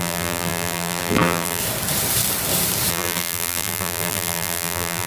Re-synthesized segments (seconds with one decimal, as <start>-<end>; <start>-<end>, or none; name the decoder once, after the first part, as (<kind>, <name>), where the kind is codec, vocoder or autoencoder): 0.0-1.6 (vocoder, BigVGAN v2); 2.9-5.1